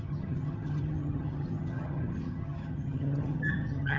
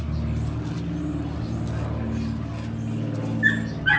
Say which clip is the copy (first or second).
first